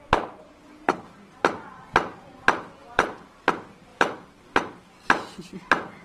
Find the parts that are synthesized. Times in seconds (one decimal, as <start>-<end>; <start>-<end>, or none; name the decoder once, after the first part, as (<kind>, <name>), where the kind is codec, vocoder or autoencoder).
2.8-3.4 (vocoder, BigVGAN v2); 3.9-4.8